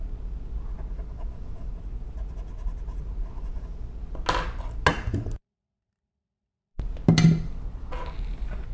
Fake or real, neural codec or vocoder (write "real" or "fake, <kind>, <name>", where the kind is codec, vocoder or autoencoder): real